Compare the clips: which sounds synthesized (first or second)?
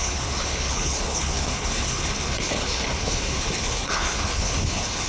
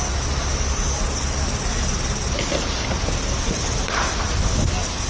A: first